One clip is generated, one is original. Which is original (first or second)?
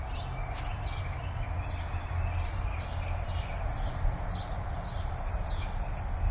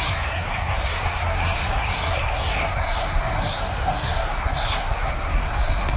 first